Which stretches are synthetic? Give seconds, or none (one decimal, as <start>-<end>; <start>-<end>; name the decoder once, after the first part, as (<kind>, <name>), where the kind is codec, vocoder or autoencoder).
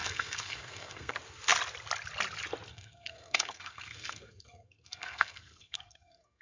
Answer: 0.0-1.1 (codec, SNAC); 2.7-6.4